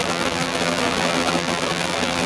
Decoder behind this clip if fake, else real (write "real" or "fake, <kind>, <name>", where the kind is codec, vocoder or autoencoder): fake, vocoder, BigVGAN v2